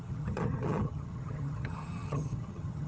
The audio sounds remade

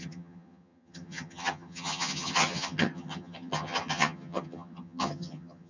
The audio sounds remade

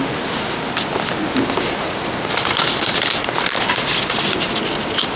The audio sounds recorded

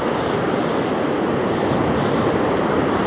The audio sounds recorded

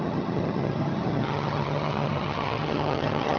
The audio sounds remade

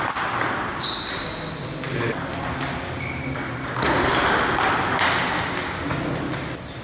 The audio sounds recorded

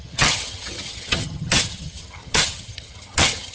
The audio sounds remade